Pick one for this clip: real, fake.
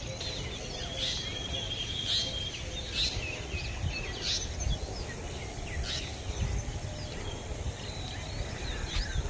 real